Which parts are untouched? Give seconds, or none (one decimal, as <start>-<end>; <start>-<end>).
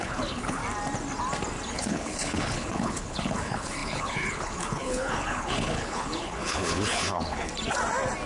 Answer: 0.6-1.7; 7.5-8.3